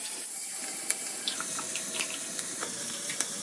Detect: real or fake fake